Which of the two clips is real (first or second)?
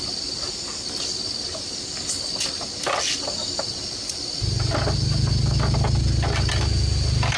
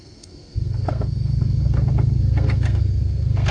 first